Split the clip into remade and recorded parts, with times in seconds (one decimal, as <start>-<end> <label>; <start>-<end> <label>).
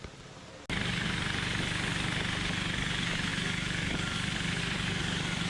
0.0-5.5 recorded